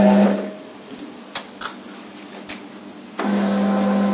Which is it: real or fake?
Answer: real